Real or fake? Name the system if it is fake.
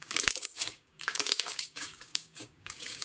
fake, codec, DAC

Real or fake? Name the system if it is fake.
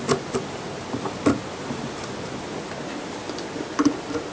real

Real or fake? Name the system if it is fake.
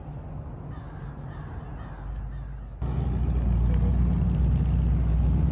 real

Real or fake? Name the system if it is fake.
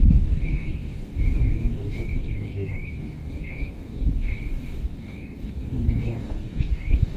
fake, codec, DAC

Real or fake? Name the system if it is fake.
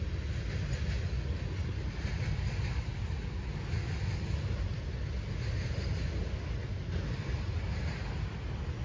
real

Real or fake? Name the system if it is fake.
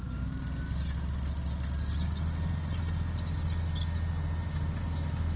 real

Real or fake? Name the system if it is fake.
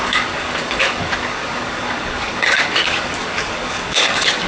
fake, codec, DAC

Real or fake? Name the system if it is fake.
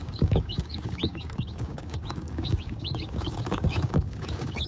fake, codec, DAC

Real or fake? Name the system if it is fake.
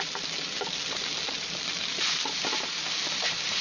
real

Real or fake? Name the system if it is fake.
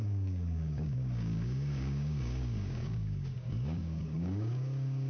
fake, codec, DAC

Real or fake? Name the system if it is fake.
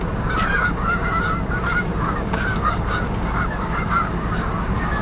fake, codec, DAC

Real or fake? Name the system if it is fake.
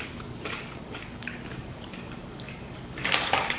fake, codec, DAC